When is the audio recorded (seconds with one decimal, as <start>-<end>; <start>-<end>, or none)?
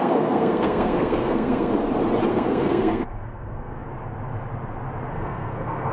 1.7-2.3; 3.8-5.1